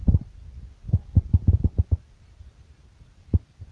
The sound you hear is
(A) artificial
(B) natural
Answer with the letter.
B